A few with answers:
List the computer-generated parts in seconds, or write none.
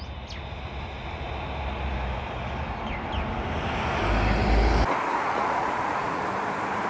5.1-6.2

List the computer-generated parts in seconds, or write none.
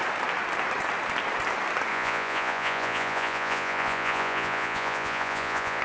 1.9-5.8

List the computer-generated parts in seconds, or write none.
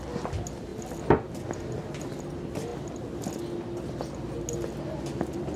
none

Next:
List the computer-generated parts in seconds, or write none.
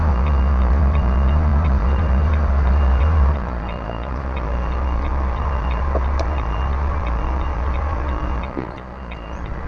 0.0-9.7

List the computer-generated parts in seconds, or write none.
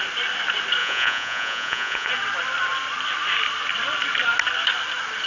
0.8-2.1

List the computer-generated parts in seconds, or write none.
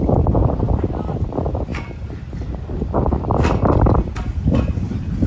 none